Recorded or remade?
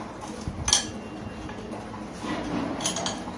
recorded